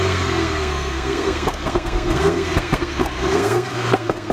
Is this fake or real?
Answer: fake